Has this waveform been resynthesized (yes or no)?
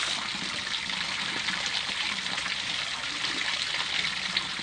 no